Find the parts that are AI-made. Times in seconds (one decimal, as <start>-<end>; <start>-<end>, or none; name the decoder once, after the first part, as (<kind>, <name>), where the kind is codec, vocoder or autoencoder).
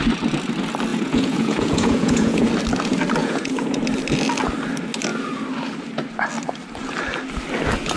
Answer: 0.9-2.5 (vocoder, Vocos); 3.2-3.8